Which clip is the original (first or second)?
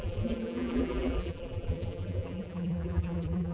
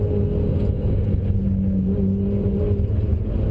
second